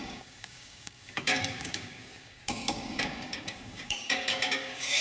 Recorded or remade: remade